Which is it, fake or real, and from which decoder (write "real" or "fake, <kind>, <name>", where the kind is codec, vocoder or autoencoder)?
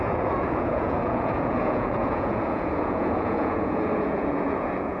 fake, vocoder, Vocos